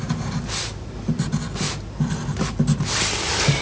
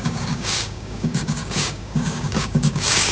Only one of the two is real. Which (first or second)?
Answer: first